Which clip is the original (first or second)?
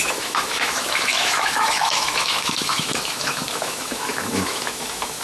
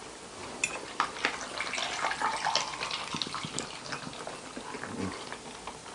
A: second